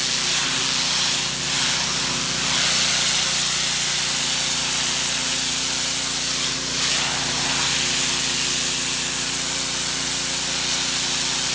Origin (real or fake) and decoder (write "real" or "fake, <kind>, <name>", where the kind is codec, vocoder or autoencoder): real